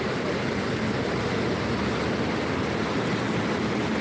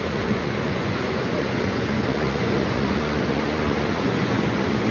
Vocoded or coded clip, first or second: second